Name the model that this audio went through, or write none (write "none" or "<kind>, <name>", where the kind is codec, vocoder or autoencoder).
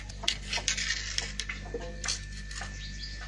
none